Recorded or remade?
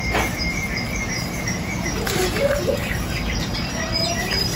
remade